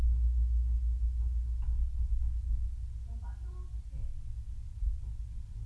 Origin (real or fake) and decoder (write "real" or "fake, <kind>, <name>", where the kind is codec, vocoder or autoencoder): real